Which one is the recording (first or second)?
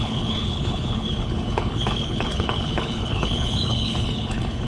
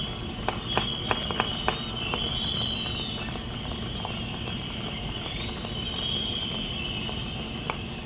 second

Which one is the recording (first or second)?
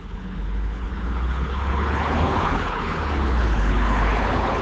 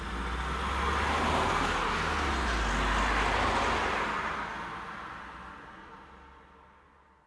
second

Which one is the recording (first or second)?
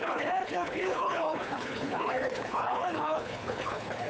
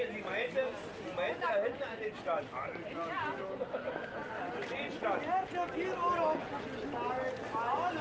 second